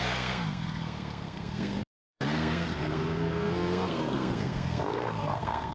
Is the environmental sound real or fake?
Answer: fake